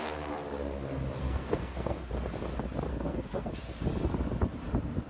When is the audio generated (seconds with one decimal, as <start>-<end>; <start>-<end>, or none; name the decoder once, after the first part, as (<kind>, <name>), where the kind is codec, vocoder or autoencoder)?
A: 1.2-2.1 (codec, SNAC); 2.9-3.5